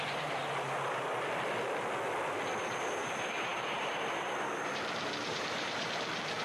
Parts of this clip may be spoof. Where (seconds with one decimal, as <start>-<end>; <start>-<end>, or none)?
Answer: 0.0-0.4; 2.6-6.4